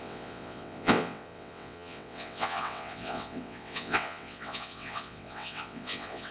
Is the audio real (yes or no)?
no